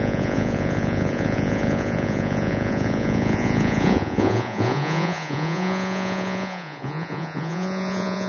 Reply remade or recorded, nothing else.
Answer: remade